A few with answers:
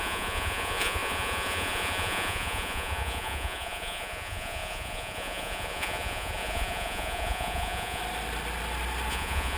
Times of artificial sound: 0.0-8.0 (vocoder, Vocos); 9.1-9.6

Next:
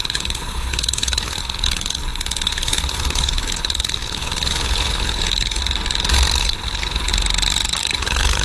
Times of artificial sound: 0.0-5.6 (codec, HILCodec); 6.4-7.1; 7.8-8.4

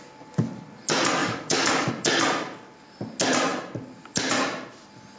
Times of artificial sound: 1.2-1.9 (codec, DAC)

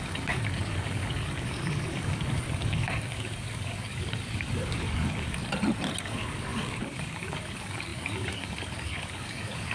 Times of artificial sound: 0.0-5.4 (codec, DAC); 6.0-9.7

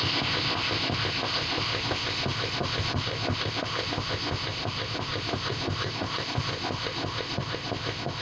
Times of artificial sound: 0.0-8.2 (codec, ZipCodec)

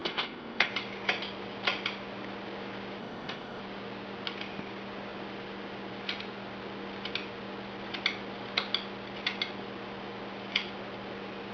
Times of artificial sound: 0.0-0.7 (codec, ZipCodec); 3.0-3.6

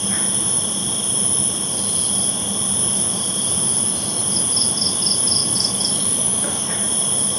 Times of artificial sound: 5.4-6.7 (codec, DAC)